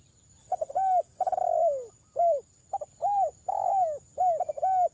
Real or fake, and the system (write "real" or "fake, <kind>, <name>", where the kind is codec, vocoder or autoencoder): real